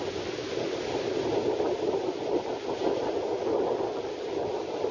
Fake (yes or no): no